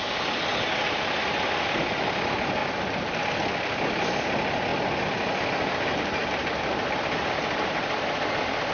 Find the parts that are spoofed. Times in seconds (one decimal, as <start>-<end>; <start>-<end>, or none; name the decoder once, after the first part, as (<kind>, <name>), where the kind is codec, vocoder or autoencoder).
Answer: none